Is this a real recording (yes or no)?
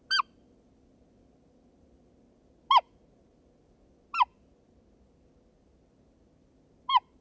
yes